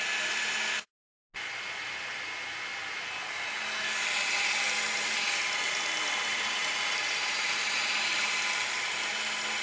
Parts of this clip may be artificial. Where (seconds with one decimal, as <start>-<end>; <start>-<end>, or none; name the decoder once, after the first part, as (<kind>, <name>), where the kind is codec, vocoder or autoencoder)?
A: 6.3-9.1 (vocoder, BigVGAN v2)